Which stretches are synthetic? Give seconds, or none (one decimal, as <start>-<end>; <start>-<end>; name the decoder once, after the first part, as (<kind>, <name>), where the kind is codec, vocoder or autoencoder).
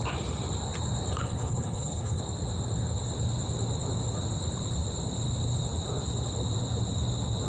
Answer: 1.2-2.2 (codec, HILCodec)